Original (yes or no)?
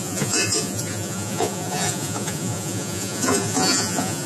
no